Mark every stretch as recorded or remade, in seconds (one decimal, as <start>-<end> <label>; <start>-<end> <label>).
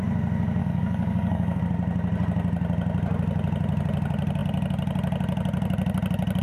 0.0-0.6 recorded; 0.6-1.6 remade; 1.6-6.4 recorded